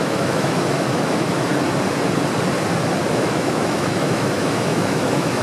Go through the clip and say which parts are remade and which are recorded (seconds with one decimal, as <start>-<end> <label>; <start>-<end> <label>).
0.0-1.5 remade; 1.5-3.1 recorded; 3.1-5.4 remade